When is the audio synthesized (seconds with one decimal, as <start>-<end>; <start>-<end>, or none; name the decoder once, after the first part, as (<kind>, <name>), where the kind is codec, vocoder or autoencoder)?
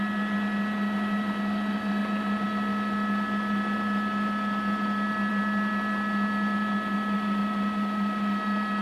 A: none